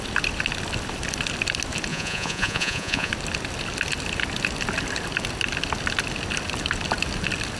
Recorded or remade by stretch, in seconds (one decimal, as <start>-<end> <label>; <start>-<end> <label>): 0.0-1.9 recorded; 1.9-3.1 remade; 3.1-7.6 recorded